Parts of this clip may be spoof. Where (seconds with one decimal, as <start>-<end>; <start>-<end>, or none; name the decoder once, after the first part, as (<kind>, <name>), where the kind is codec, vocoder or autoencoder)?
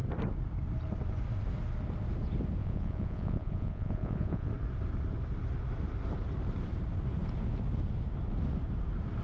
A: 2.6-4.5 (vocoder, Vocos)